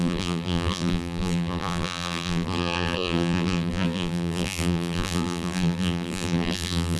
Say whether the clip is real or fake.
fake